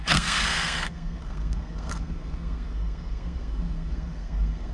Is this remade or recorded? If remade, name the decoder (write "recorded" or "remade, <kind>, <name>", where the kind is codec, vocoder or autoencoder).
remade, codec, SNAC